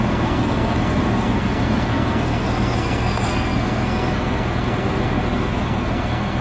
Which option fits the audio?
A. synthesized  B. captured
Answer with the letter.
A